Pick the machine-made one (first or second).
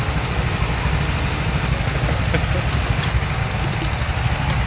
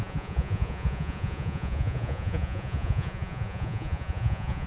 second